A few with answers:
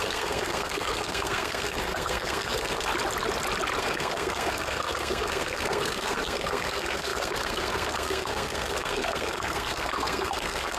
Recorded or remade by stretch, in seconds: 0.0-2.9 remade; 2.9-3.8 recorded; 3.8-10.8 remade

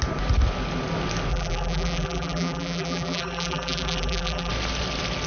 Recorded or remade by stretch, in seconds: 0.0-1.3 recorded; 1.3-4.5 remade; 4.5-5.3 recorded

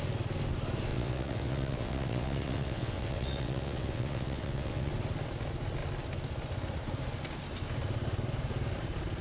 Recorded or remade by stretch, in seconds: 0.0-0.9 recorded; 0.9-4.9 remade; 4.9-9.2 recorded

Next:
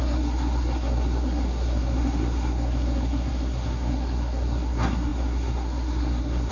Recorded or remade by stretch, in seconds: 0.0-6.5 remade